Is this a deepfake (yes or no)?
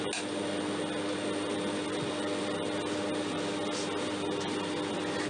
no